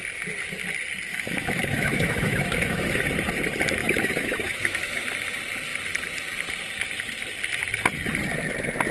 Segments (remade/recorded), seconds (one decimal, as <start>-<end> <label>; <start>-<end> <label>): 0.0-1.1 recorded; 1.1-3.0 remade; 3.0-3.8 recorded; 3.8-5.0 remade; 5.0-8.9 recorded